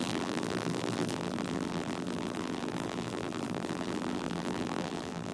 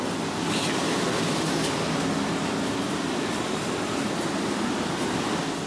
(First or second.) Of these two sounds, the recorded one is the second